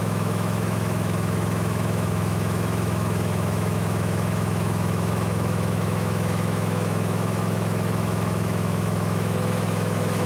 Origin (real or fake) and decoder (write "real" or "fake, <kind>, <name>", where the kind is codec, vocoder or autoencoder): fake, autoencoder, DAC-VAE